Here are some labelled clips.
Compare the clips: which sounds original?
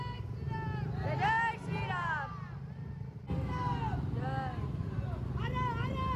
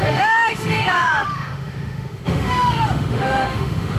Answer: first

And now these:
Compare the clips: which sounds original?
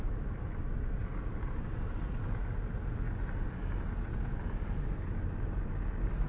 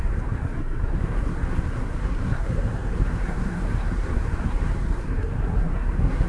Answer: first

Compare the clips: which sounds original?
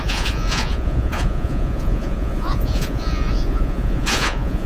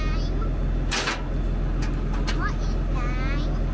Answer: second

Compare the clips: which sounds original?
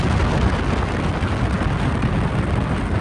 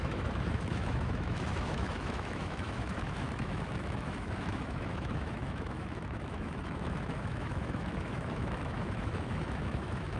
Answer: first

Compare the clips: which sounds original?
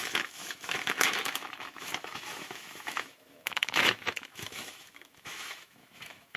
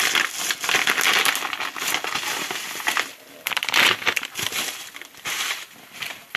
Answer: second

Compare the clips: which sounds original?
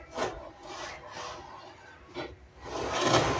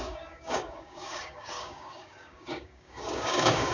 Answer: first